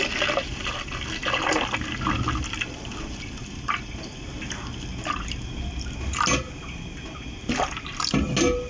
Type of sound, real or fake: real